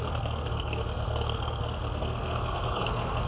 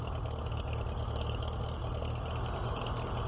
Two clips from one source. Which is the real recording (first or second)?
second